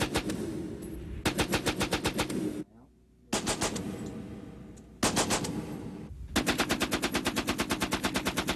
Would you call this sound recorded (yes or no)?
yes